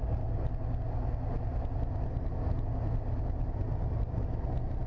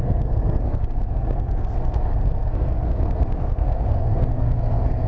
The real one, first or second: first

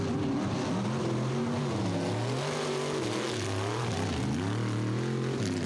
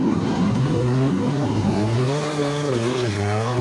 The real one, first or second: first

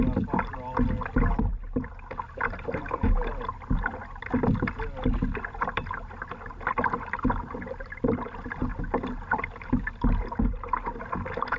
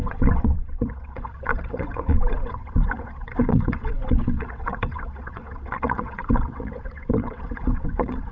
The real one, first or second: first